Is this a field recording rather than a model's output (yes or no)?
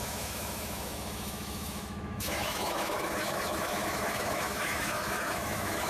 no